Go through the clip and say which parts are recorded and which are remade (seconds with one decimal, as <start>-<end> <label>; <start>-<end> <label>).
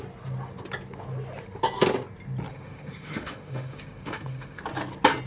0.0-2.5 recorded; 2.5-4.6 remade; 4.6-5.3 recorded